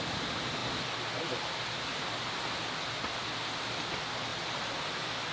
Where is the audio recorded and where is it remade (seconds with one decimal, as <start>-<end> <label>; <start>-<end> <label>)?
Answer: 0.0-5.3 recorded